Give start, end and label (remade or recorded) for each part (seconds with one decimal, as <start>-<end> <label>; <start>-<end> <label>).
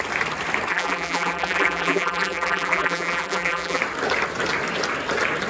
0.0-0.7 recorded; 0.7-3.8 remade; 3.8-5.5 recorded